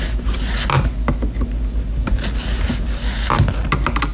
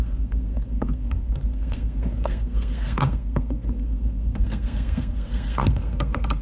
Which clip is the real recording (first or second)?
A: first